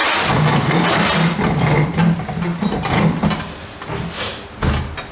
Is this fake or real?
real